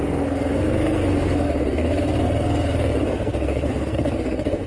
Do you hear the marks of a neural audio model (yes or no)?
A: yes